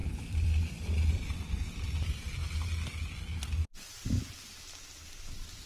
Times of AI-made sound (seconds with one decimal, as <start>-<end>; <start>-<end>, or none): 0.0-2.4; 5.3-5.7